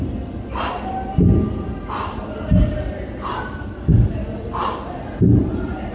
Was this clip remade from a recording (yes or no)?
no